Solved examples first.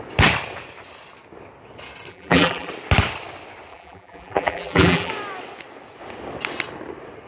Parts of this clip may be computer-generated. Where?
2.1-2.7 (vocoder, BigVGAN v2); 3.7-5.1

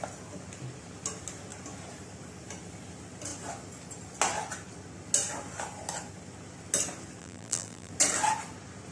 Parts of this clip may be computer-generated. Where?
7.2-7.9 (vocoder, BigVGAN v2)

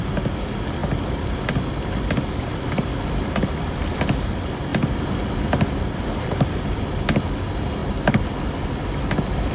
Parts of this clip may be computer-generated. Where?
2.5-4.3 (vocoder, BigVGAN v2); 4.7-6.8